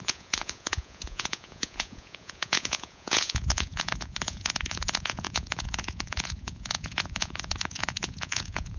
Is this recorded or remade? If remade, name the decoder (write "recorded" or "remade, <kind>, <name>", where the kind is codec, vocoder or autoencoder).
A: remade, vocoder, Vocos